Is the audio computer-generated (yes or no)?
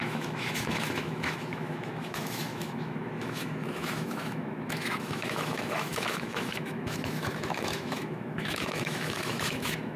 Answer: yes